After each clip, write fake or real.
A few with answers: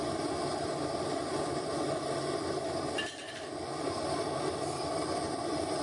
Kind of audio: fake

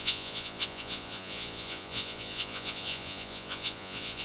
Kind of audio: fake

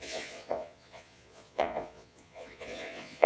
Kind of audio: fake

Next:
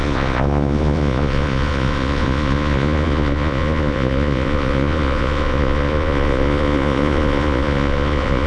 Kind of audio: fake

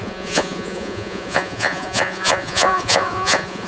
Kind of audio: fake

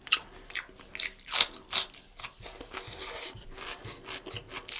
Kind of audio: real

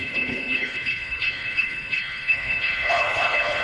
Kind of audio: fake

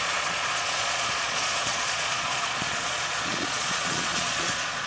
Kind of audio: fake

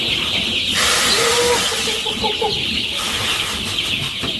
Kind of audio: fake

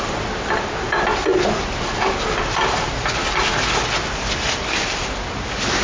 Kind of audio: real